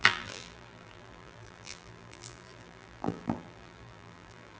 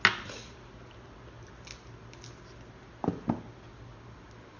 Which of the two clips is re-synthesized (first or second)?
first